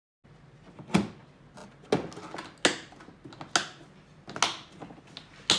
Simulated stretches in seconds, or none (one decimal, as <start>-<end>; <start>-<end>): none